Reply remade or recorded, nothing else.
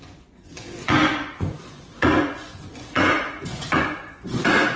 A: remade